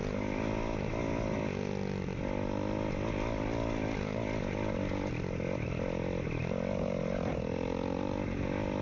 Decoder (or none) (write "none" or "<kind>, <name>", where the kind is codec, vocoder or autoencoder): none